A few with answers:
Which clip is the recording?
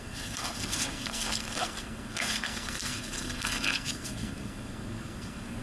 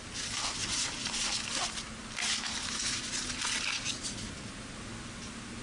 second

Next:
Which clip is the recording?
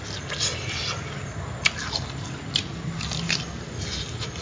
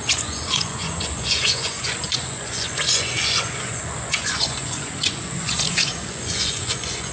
first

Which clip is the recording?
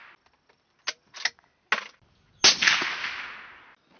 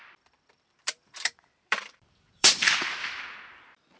first